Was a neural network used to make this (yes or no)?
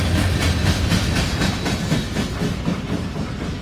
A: no